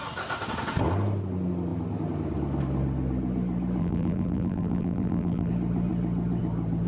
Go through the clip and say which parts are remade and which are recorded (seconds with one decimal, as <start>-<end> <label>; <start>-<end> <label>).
0.0-3.8 recorded; 3.8-5.5 remade; 5.5-6.9 recorded

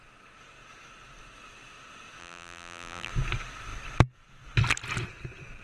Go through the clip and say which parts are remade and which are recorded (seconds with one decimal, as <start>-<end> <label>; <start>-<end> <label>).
0.0-2.2 recorded; 2.2-3.1 remade; 3.1-5.6 recorded

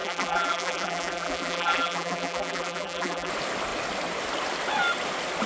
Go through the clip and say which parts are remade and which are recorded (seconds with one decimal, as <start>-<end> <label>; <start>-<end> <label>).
0.0-3.3 remade; 3.3-5.5 recorded

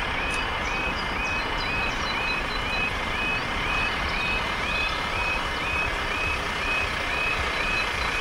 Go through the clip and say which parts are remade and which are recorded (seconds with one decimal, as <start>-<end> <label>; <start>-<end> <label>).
0.0-8.2 remade

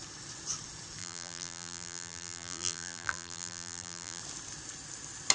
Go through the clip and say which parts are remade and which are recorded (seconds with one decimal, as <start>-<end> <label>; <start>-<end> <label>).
0.0-1.0 recorded; 1.0-4.2 remade; 4.2-5.3 recorded

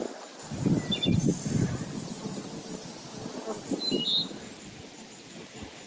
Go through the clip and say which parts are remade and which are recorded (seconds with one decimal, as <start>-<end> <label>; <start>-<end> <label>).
0.0-5.9 recorded

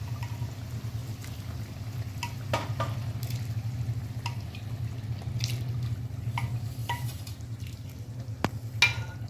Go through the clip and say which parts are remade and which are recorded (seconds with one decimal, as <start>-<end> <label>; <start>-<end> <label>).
0.0-6.8 recorded; 6.8-8.2 remade; 8.2-9.3 recorded